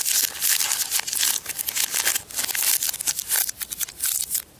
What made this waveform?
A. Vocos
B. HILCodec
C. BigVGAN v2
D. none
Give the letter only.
D